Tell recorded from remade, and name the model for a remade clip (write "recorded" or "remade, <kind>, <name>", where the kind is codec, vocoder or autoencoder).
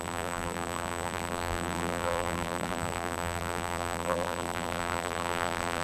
remade, vocoder, BigVGAN v2